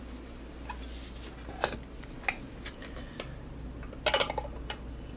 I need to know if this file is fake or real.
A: real